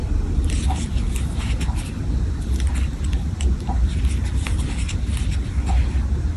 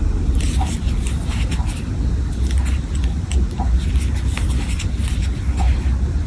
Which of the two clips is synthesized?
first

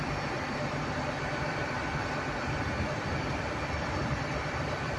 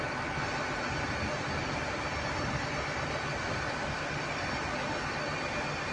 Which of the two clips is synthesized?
first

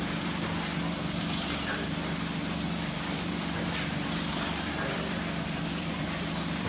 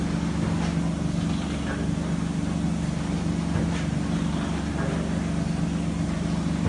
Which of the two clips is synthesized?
first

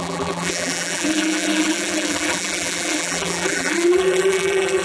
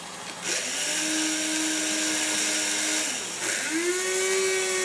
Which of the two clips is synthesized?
first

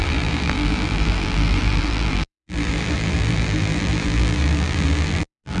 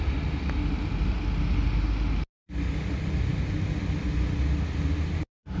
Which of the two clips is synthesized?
first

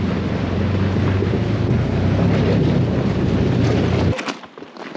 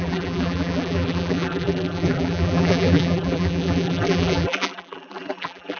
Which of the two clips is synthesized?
second